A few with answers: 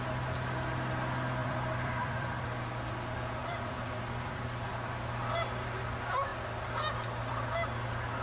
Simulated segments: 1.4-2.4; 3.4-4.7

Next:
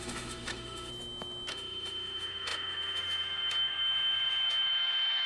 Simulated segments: 0.0-0.9; 1.5-5.3